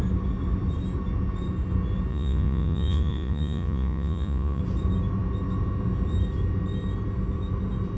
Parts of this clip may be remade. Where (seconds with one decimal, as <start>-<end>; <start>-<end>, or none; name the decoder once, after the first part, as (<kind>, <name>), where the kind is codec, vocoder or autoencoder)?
2.1-4.6 (vocoder, Vocos)